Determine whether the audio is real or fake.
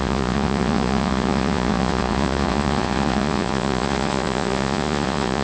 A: fake